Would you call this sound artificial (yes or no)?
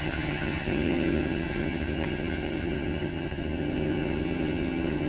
yes